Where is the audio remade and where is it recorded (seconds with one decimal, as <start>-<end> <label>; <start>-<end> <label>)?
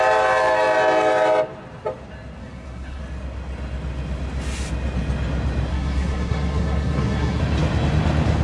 0.0-2.4 recorded; 2.4-3.0 remade; 3.0-5.7 recorded; 5.7-7.4 remade; 7.4-8.4 recorded